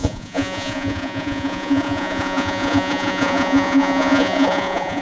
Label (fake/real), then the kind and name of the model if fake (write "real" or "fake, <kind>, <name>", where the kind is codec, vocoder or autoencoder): fake, vocoder, Vocos